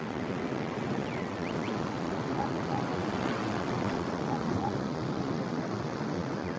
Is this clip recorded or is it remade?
remade